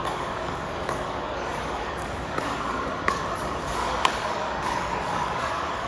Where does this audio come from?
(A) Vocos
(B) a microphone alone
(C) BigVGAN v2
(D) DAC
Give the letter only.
D